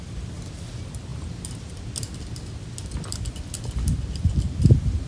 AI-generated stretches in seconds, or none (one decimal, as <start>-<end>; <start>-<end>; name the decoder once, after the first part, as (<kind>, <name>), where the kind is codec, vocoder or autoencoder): none